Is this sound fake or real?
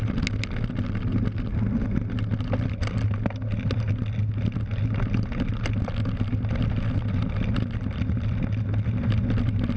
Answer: real